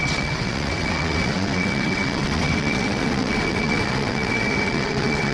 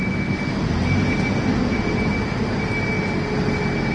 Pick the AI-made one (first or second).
first